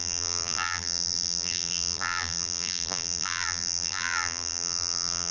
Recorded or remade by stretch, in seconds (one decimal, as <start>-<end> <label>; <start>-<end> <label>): 0.0-5.3 remade

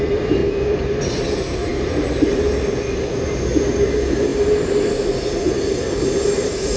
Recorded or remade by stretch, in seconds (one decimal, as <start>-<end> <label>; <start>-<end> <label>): 0.0-0.4 remade; 0.4-1.0 recorded; 1.0-1.7 remade; 1.7-2.3 recorded; 2.3-6.8 remade

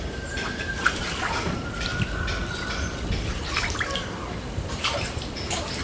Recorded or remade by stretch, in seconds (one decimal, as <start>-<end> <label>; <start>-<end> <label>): 0.0-1.9 remade; 1.9-3.2 recorded; 3.2-5.8 remade

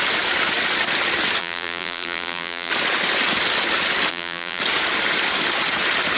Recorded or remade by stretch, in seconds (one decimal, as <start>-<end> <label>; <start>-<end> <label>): 0.0-1.4 recorded; 1.4-2.7 remade; 2.7-4.1 recorded; 4.1-4.6 remade; 4.6-6.2 recorded